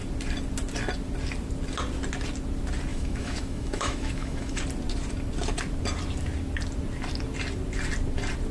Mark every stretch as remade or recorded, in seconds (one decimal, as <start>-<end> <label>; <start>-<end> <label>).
0.0-2.9 recorded; 2.9-4.6 remade; 4.6-8.5 recorded